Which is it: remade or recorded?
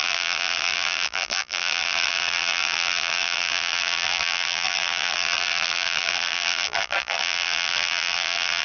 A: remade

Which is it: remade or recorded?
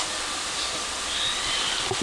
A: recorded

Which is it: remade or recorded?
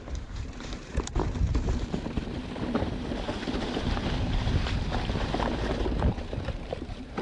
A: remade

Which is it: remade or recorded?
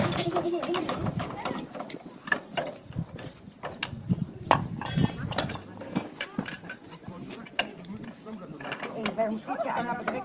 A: remade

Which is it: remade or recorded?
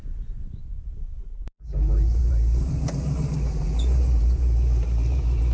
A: remade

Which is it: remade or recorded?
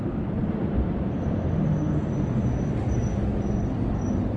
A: recorded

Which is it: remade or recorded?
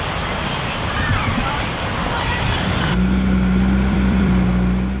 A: remade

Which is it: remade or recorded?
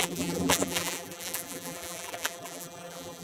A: remade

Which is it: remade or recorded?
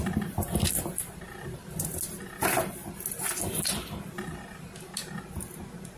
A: recorded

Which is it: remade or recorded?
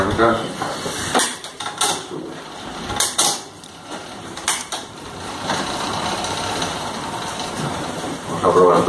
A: remade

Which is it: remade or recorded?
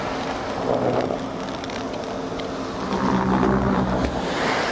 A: recorded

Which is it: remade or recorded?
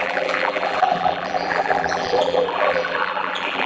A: remade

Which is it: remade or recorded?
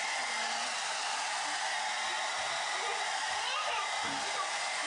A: recorded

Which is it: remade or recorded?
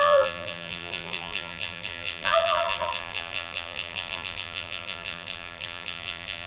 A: remade